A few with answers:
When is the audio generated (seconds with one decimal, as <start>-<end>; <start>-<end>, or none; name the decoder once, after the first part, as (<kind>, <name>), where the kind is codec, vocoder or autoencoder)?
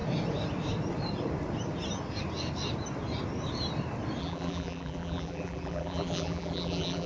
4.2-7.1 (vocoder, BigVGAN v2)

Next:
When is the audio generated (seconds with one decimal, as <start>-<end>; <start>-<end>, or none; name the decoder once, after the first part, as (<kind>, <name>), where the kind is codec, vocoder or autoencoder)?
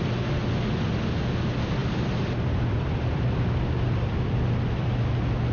1.8-5.1 (vocoder, BigVGAN v2)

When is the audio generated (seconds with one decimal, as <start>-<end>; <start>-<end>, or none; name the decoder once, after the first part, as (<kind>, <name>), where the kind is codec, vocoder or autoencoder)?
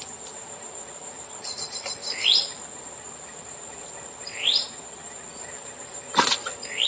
0.0-6.9 (vocoder, BigVGAN v2)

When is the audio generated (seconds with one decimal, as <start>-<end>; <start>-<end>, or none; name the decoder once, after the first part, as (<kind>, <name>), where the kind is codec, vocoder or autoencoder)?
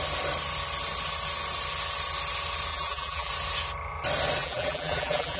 2.7-3.3 (vocoder, BigVGAN v2); 4.4-5.4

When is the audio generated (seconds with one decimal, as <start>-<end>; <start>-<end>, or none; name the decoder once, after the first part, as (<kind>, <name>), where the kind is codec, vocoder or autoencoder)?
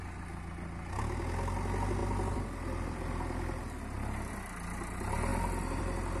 2.0-4.3 (vocoder, BigVGAN v2); 5.3-5.8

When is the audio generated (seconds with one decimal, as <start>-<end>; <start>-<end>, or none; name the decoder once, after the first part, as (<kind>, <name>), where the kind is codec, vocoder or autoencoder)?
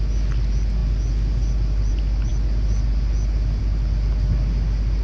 none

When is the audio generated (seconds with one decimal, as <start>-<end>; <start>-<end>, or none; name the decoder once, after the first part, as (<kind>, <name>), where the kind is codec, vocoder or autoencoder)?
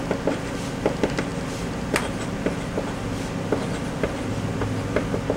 none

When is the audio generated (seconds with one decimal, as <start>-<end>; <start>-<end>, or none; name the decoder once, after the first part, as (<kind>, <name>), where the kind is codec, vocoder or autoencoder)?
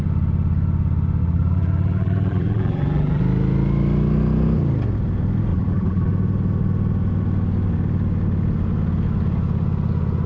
1.2-3.2 (vocoder, BigVGAN v2); 5.5-6.1